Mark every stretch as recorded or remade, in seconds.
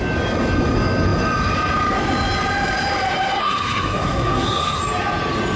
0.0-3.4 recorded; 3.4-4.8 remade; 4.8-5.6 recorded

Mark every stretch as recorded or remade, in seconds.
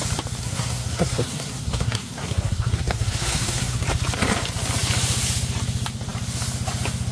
0.0-0.4 recorded; 0.4-3.8 remade; 3.8-7.1 recorded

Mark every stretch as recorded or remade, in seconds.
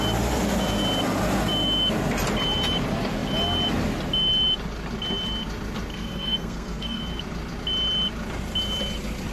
0.0-5.9 recorded; 5.9-7.0 remade; 7.0-9.3 recorded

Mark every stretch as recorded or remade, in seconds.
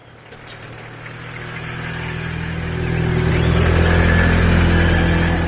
0.0-5.5 recorded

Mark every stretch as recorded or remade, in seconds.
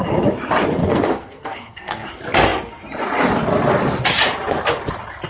0.0-0.8 recorded; 0.8-2.1 remade; 2.1-5.3 recorded